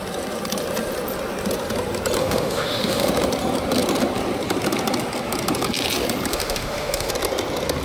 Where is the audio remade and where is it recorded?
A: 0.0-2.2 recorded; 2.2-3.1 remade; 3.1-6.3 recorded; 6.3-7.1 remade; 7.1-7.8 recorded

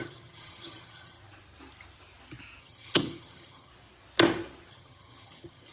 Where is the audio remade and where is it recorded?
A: 0.0-1.2 remade; 1.2-2.6 recorded; 2.6-3.7 remade; 3.7-4.7 recorded; 4.7-5.7 remade

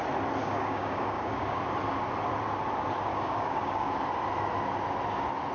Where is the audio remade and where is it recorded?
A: 0.0-0.4 recorded; 0.4-1.6 remade; 1.6-3.1 recorded; 3.1-3.9 remade; 3.9-5.5 recorded